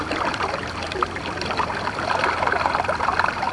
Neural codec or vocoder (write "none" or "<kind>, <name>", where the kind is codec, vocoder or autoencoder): vocoder, BigVGAN v2